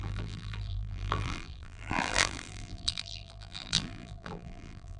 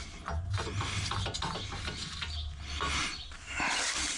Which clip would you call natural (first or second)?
second